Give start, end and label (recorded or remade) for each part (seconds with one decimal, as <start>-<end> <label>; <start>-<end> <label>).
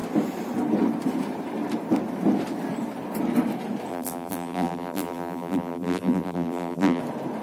0.0-3.9 recorded; 3.9-7.0 remade; 7.0-7.4 recorded